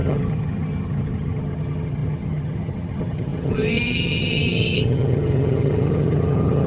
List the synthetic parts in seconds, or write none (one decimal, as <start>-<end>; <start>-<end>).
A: 0.0-6.7